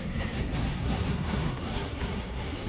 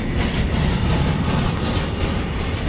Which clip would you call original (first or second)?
second